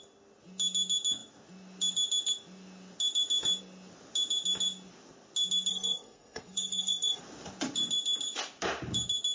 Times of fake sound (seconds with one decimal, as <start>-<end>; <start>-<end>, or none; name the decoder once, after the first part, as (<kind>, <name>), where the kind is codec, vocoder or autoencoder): 5.7-7.2 (codec, SNAC)